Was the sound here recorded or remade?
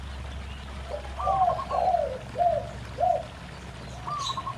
recorded